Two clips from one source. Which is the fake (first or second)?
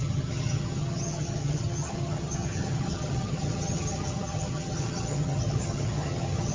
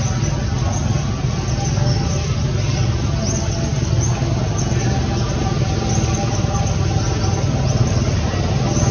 first